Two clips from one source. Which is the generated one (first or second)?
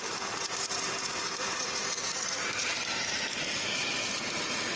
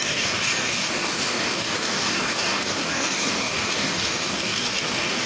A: second